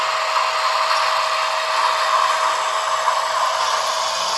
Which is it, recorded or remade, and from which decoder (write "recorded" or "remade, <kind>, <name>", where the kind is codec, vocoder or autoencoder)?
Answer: recorded